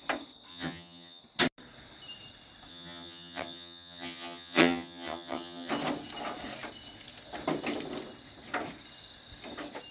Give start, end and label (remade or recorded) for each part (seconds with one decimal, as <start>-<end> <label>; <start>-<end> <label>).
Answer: 0.0-0.5 recorded; 0.5-1.2 remade; 1.2-2.7 recorded; 2.7-5.7 remade; 5.7-9.9 recorded